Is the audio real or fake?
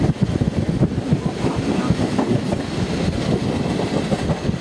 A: real